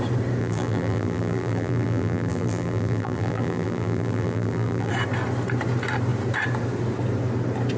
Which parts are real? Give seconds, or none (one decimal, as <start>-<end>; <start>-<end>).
0.0-0.4; 4.9-7.8